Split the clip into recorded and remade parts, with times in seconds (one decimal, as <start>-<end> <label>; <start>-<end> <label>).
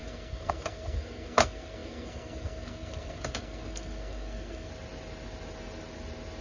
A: 0.0-4.7 remade; 4.7-6.4 recorded